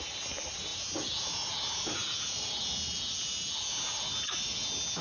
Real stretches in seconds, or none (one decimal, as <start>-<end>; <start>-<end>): 0.0-5.0